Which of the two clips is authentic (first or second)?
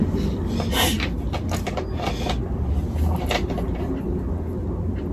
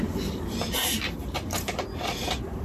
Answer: first